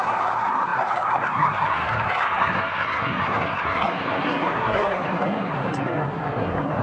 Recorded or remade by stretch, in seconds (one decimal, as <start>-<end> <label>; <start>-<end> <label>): 0.0-6.8 remade

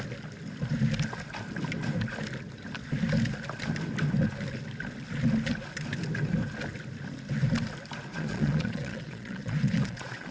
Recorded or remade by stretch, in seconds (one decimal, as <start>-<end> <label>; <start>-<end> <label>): 0.0-8.1 recorded; 8.1-10.3 remade

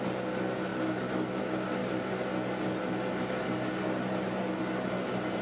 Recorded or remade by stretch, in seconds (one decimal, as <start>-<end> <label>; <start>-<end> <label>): 0.0-5.4 recorded

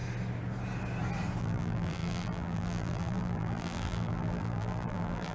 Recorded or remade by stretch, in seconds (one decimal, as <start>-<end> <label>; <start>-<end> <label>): 0.0-1.4 recorded; 1.4-5.3 remade

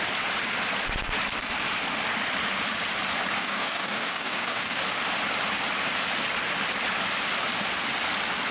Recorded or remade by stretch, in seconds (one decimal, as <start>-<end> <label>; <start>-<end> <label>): 0.0-3.4 recorded; 3.4-4.8 remade; 4.8-8.5 recorded

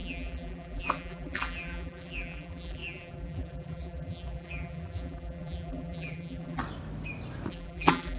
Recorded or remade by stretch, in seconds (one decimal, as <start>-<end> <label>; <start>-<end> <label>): 0.0-6.6 remade; 6.6-7.5 recorded; 7.5-8.2 remade

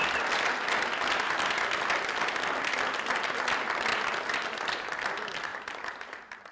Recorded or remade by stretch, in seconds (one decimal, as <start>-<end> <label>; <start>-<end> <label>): 0.0-5.5 recorded; 5.5-6.1 remade; 6.1-6.5 recorded